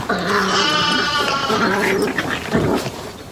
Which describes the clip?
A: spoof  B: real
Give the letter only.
B